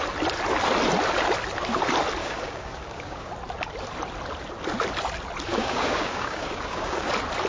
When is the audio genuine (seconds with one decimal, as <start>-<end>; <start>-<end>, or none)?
0.0-2.2; 3.3-5.5; 7.1-7.5